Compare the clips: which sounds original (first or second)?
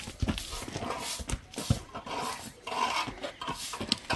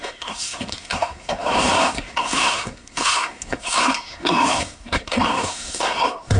first